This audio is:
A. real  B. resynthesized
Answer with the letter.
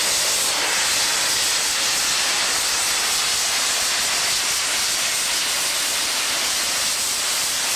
A